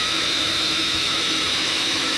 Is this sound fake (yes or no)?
yes